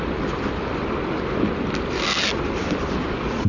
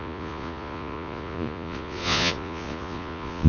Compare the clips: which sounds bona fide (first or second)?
first